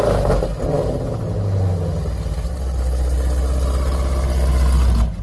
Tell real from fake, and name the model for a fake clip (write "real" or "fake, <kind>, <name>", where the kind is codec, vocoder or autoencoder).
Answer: real